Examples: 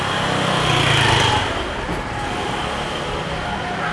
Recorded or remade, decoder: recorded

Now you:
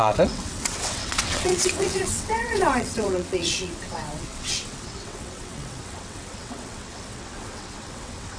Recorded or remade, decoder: remade, vocoder, WaveNeXt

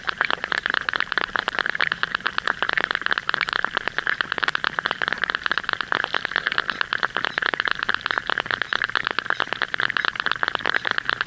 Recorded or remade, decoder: remade, vocoder, BigVGAN v2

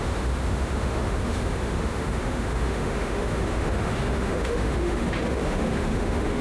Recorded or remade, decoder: remade, autoencoder, DAC-VAE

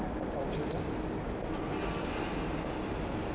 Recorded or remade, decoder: recorded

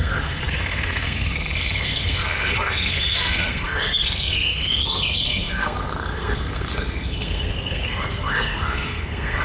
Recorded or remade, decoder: remade, codec, SNAC